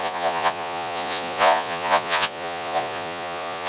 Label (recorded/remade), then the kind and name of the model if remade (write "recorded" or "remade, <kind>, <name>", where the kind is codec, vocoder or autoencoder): remade, vocoder, Vocos